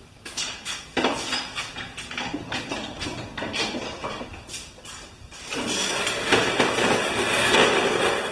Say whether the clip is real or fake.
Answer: real